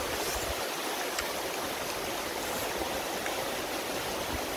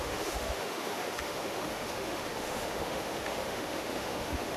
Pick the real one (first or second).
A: first